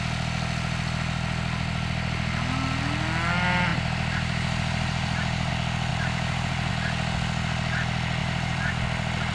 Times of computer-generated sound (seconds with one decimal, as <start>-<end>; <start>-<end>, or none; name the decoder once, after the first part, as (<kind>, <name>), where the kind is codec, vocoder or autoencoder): 3.7-5.5 (vocoder, BigVGAN v2); 5.9-6.7; 8.2-8.7

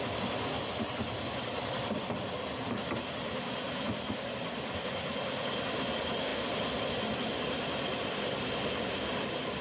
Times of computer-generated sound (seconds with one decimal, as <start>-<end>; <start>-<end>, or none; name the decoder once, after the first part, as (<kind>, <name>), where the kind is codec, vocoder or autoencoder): none

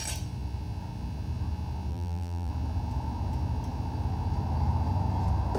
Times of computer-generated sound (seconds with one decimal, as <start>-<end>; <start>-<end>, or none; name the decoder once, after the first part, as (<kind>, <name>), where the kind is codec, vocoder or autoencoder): 1.9-2.5 (vocoder, BigVGAN v2)

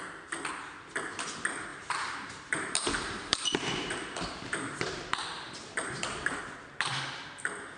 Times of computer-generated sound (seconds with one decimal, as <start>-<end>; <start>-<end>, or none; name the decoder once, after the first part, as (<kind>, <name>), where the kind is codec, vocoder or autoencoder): 1.7-6.4 (vocoder, BigVGAN v2)

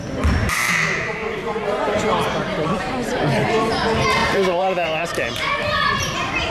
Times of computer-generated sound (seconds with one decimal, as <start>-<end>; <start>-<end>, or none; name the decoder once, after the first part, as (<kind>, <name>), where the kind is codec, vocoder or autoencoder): 0.4-2.9 (vocoder, BigVGAN v2); 4.2-6.5

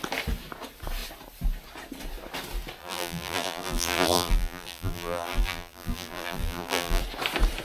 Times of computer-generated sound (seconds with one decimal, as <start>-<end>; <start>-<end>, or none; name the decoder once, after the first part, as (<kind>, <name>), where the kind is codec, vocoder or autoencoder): 2.8-7.0 (vocoder, BigVGAN v2)

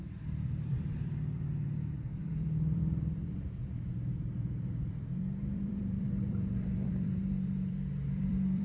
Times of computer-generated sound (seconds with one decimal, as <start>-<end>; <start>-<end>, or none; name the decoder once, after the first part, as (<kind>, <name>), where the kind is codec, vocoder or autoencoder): 0.0-8.6 (vocoder, BigVGAN v2)

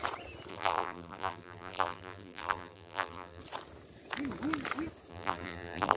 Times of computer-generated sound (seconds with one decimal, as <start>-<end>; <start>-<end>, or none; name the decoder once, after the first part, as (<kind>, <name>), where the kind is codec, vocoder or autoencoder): 0.5-3.4 (vocoder, BigVGAN v2); 5.1-6.0